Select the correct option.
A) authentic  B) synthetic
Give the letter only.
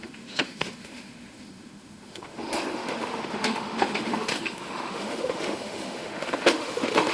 B